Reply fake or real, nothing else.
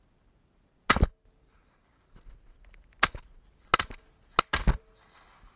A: real